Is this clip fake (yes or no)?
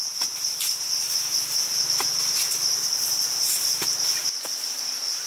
no